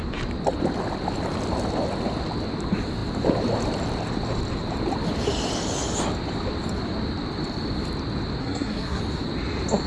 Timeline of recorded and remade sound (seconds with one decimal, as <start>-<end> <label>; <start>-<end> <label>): 0.0-8.4 recorded; 8.4-9.0 remade; 9.0-9.9 recorded